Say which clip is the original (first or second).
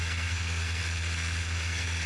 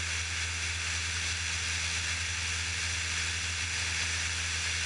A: second